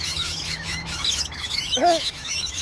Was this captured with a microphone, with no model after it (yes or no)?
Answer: no